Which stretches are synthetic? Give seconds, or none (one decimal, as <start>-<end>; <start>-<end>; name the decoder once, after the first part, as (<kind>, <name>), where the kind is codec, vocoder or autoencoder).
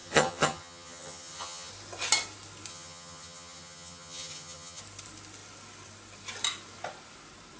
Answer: 0.0-1.7 (vocoder, HiFi-GAN); 2.7-4.8